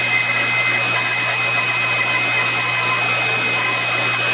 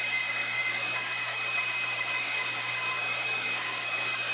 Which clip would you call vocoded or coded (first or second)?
second